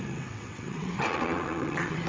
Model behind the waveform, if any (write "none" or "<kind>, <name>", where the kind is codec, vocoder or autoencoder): vocoder, WaveNeXt